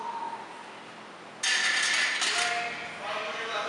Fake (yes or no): no